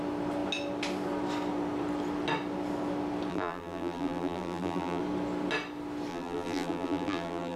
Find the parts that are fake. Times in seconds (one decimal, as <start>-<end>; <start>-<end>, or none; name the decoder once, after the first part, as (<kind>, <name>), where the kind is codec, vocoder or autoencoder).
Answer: 3.3-5.0 (vocoder, BigVGAN v2); 6.1-7.6